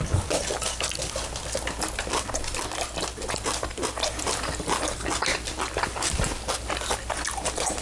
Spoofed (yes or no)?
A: no